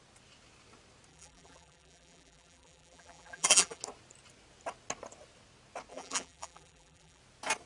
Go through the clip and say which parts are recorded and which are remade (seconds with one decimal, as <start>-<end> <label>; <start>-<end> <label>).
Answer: 0.0-1.1 recorded; 1.1-3.8 remade; 3.8-5.9 recorded; 5.9-7.2 remade; 7.2-7.7 recorded